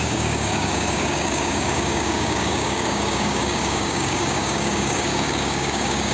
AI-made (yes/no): yes